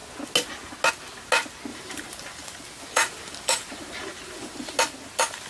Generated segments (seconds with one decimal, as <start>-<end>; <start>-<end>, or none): 1.7-4.8